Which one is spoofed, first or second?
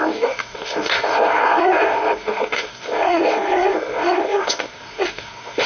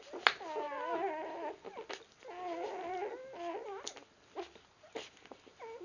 first